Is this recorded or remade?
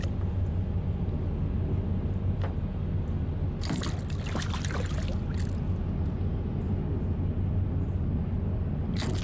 recorded